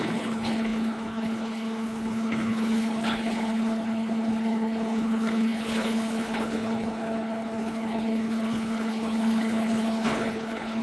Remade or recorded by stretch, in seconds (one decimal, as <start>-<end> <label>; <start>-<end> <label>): 0.0-10.8 remade